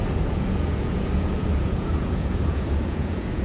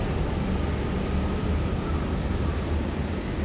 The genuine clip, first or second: second